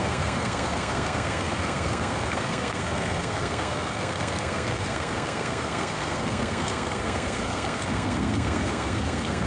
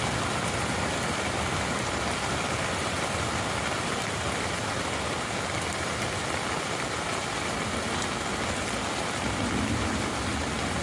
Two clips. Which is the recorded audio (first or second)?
second